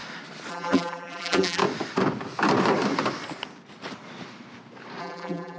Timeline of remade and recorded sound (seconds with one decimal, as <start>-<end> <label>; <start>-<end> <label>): 0.0-0.5 recorded; 0.5-1.6 remade; 1.6-5.0 recorded; 5.0-5.6 remade